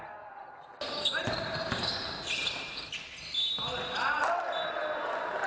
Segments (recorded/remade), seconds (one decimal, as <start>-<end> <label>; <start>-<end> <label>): 0.0-5.5 recorded